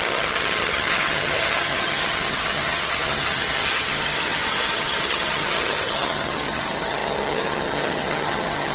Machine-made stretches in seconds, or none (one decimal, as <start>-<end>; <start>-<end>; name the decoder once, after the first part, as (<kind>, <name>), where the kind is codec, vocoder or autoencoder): 0.0-8.7 (vocoder, HiFi-GAN)